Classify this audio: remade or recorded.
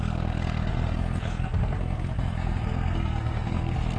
remade